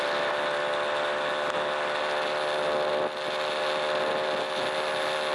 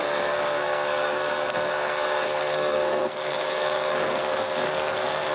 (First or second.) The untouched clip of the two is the first